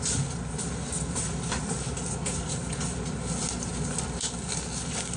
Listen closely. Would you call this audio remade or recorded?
recorded